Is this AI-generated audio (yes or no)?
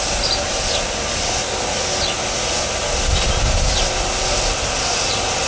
no